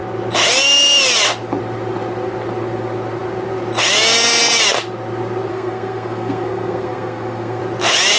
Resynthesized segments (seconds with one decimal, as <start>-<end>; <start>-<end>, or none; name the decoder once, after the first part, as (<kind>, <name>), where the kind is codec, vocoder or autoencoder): 5.5-7.6 (codec, SNAC)